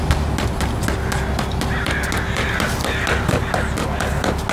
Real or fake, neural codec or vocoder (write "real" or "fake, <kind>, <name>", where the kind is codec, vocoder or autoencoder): real